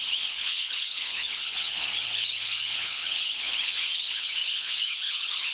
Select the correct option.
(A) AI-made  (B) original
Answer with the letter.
A